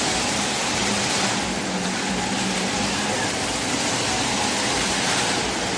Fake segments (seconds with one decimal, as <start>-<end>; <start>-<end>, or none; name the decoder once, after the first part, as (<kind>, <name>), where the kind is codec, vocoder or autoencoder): none